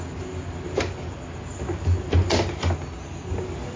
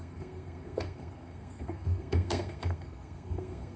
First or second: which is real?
first